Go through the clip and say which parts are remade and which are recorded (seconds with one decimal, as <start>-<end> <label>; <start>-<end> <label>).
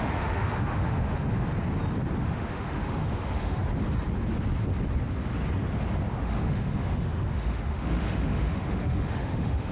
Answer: 0.0-1.5 remade; 1.5-2.2 recorded; 2.2-3.6 remade; 3.6-6.2 recorded; 6.2-9.7 remade